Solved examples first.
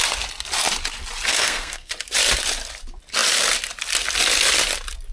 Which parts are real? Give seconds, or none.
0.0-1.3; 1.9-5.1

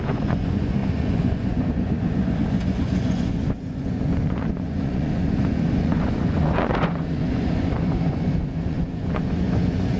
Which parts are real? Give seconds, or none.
none

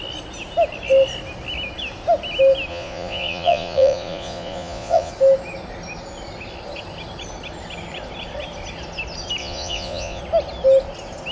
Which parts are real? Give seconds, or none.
0.0-2.7; 5.1-9.4; 10.2-11.3

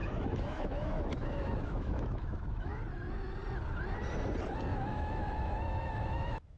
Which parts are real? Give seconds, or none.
2.8-4.7

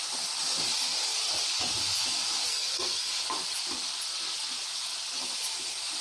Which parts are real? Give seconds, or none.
0.0-2.5; 3.1-6.0